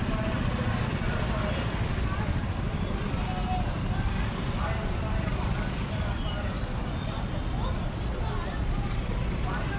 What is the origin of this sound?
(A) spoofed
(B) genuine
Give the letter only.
B